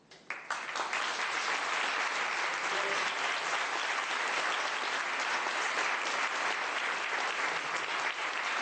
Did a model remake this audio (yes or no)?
no